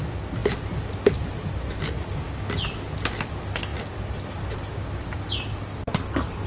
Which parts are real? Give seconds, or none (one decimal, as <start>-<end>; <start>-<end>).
0.0-6.5